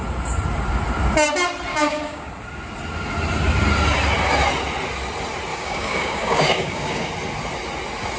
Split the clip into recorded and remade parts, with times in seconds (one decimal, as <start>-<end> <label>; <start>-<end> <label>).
0.0-1.7 recorded; 1.7-2.3 remade; 2.3-5.5 recorded; 5.5-7.1 remade; 7.1-8.2 recorded